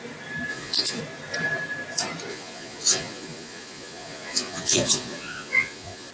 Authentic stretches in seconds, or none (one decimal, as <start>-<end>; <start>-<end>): 0.0-0.5; 1.0-2.3